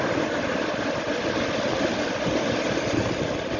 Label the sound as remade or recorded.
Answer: recorded